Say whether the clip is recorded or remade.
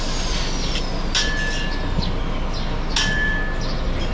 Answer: recorded